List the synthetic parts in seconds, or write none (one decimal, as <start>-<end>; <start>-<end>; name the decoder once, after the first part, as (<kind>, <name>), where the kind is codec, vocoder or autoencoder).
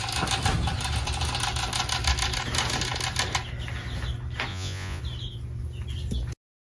4.5-5.0 (vocoder, Vocos)